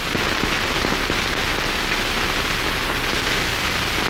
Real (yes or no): yes